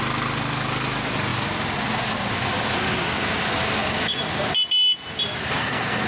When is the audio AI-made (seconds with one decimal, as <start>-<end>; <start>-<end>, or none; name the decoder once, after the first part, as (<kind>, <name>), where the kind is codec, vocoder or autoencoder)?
5.6-6.1 (codec, SNAC)